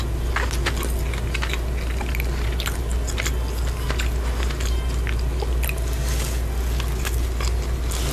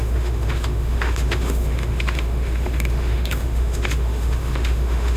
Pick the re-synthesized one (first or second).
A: second